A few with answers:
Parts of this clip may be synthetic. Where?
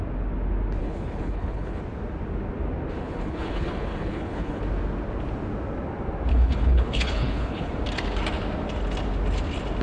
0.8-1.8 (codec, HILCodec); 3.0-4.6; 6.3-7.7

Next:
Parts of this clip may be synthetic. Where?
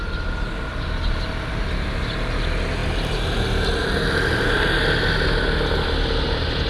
none